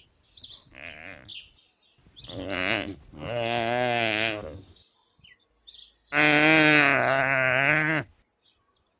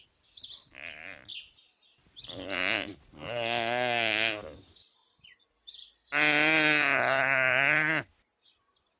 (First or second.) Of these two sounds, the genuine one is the first